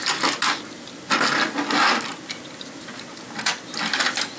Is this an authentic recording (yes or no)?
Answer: yes